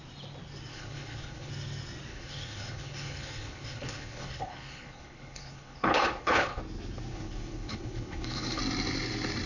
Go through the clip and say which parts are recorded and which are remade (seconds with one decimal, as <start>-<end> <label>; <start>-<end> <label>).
0.0-0.7 recorded; 0.7-1.5 remade; 1.5-2.1 recorded; 2.1-6.6 remade; 6.6-7.1 recorded; 7.1-8.6 remade; 8.6-9.5 recorded